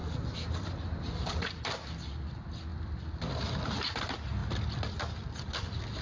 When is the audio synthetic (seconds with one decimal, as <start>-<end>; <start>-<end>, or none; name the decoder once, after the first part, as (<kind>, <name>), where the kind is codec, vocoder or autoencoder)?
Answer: none